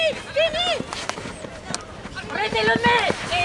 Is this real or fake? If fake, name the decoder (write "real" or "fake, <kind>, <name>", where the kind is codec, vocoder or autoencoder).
real